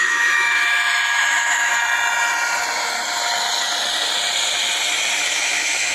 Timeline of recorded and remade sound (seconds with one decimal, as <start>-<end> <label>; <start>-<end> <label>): 0.0-1.7 remade; 1.7-5.2 recorded; 5.2-5.9 remade